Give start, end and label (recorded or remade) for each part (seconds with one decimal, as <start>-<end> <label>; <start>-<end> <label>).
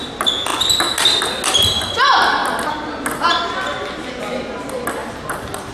0.0-5.7 recorded